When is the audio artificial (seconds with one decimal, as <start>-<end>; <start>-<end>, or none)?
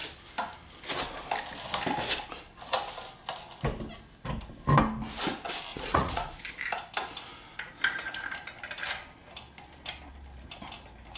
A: 5.7-6.4